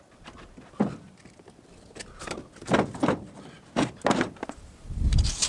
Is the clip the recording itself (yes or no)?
yes